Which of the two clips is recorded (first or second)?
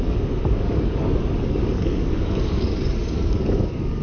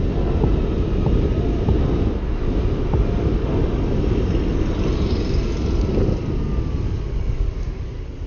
second